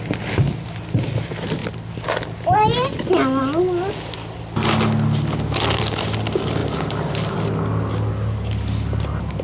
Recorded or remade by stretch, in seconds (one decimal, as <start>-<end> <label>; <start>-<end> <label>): 0.0-9.4 recorded